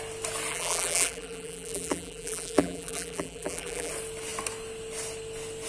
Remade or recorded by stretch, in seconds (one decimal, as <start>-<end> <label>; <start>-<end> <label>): 0.0-0.5 recorded; 0.5-3.9 remade; 3.9-5.7 recorded